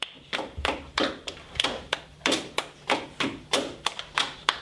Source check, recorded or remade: remade